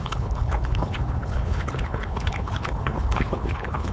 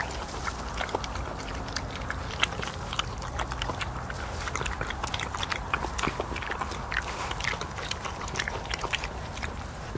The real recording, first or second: second